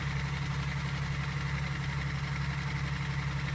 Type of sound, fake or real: real